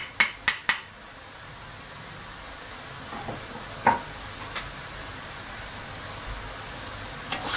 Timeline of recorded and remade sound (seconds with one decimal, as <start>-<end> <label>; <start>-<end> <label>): 0.0-5.1 recorded; 5.1-5.7 remade; 5.7-7.6 recorded